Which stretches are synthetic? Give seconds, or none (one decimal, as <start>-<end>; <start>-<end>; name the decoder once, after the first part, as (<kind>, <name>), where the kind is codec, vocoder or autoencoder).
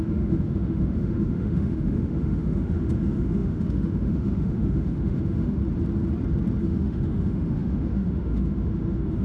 0.0-5.6 (autoencoder, DAC-VAE); 6.6-9.2